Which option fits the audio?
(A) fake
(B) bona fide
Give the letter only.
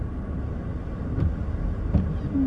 B